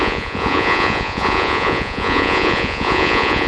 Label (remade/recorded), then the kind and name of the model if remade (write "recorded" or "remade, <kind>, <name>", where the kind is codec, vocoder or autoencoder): remade, vocoder, Vocos